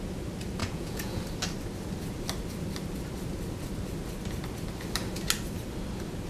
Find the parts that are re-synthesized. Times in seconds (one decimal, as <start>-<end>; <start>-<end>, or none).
0.6-1.2